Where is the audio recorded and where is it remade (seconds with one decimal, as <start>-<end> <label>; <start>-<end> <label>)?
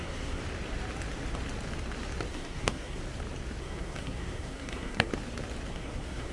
0.0-0.4 remade; 0.4-2.3 recorded; 2.3-3.0 remade; 3.0-3.6 recorded; 3.6-5.1 remade; 5.1-5.7 recorded; 5.7-6.3 remade